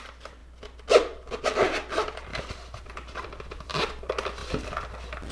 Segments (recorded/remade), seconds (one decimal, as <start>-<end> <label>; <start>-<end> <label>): 0.0-2.3 recorded; 2.3-3.7 remade; 3.7-4.4 recorded; 4.4-5.3 remade